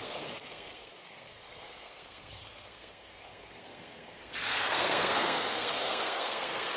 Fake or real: fake